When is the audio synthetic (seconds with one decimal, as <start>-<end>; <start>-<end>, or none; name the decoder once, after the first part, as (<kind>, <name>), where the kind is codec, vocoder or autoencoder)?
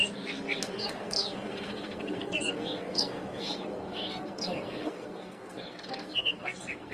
0.0-6.9 (codec, SNAC)